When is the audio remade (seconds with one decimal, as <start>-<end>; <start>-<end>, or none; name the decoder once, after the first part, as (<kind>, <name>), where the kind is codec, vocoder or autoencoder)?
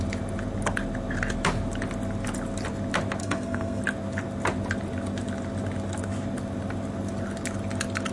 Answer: 3.2-3.8 (codec, SNAC)